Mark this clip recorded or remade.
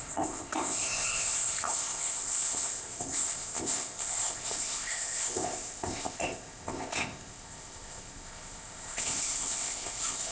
remade